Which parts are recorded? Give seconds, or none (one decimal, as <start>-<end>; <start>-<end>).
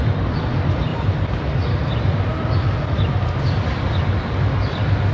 0.9-3.4